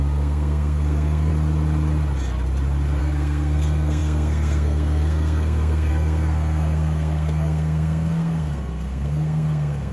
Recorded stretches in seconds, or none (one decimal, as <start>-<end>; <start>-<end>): 1.3-3.0